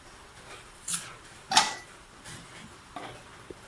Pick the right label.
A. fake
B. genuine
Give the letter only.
A